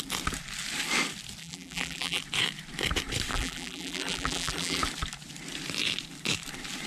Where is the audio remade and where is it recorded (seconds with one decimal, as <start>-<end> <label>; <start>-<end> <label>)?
0.0-1.4 recorded; 1.4-2.2 remade; 2.2-3.3 recorded; 3.3-4.8 remade; 4.8-6.9 recorded